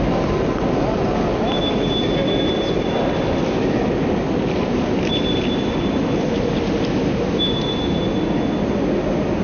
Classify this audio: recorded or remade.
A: recorded